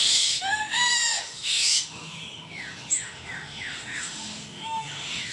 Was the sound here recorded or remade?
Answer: remade